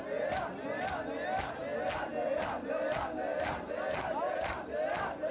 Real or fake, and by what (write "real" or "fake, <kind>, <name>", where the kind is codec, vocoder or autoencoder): real